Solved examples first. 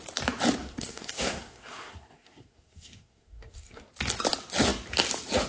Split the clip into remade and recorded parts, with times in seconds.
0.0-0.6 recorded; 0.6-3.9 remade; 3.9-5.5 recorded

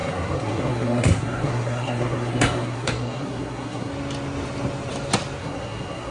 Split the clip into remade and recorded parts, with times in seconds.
0.0-3.9 remade; 3.9-5.4 recorded; 5.4-6.1 remade

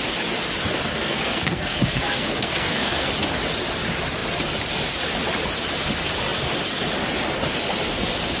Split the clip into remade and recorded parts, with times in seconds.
0.0-0.9 recorded; 0.9-3.1 remade; 3.1-8.4 recorded

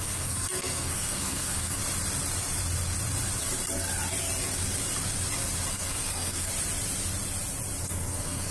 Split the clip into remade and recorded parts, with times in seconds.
0.0-1.8 remade; 1.8-5.7 recorded; 5.7-6.5 remade; 6.5-7.8 recorded; 7.8-8.5 remade